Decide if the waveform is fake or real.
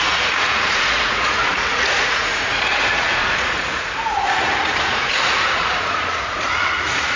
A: fake